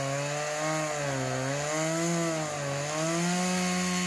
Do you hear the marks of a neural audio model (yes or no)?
no